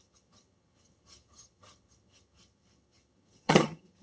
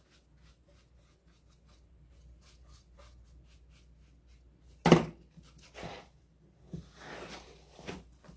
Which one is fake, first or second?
first